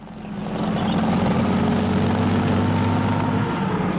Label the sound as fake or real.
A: real